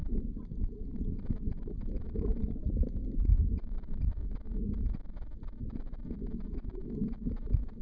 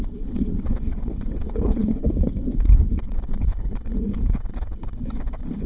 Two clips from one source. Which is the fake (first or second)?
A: second